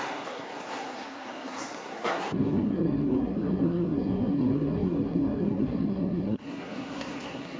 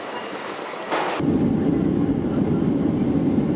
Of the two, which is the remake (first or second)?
first